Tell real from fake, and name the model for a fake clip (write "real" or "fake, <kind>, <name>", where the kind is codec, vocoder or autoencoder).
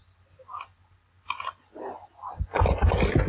real